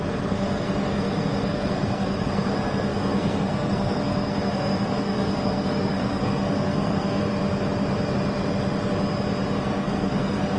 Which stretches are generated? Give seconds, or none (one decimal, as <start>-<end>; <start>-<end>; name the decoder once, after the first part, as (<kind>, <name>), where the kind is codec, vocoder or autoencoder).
0.0-7.3 (codec, SNAC); 9.6-10.6